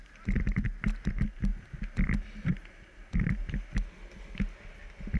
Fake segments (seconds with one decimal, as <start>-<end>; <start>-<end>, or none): none